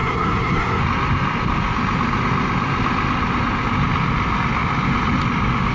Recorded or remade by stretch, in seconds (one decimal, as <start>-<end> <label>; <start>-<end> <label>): 0.0-0.8 remade; 0.8-5.7 recorded